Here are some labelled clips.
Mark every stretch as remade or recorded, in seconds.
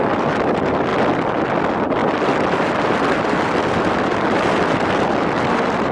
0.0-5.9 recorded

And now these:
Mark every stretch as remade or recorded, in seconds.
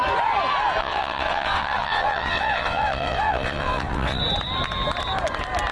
0.0-0.8 recorded; 0.8-4.2 remade; 4.2-5.7 recorded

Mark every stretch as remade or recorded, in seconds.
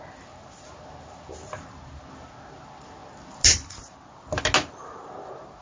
0.0-5.6 recorded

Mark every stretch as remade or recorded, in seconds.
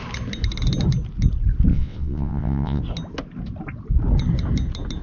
0.0-1.7 recorded; 1.7-2.8 remade; 2.8-5.0 recorded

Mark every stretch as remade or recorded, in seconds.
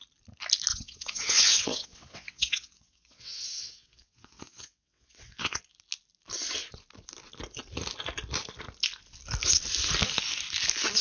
0.0-0.7 recorded; 0.7-5.6 remade; 5.6-11.0 recorded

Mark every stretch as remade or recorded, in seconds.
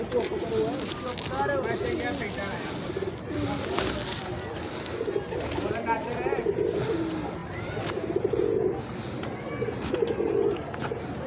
0.0-11.3 recorded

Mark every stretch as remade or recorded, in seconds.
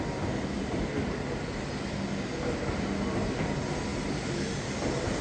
0.0-5.2 recorded